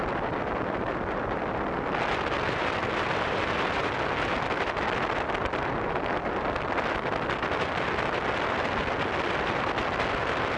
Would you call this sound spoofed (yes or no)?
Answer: no